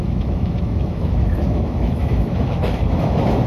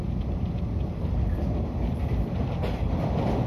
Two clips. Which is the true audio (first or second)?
second